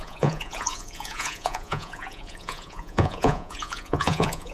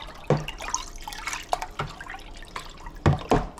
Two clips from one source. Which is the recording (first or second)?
second